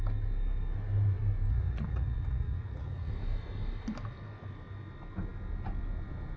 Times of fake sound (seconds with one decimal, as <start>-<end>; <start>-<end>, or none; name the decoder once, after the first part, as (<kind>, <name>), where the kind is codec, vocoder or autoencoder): 1.5-3.1 (vocoder, Vocos)